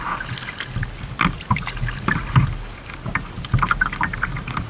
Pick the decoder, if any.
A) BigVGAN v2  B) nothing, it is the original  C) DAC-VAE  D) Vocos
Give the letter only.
B